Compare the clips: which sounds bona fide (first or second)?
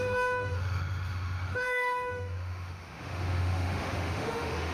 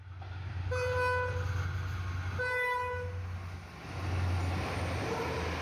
second